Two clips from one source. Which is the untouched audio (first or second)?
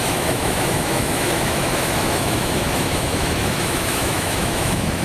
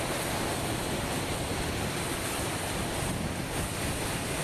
second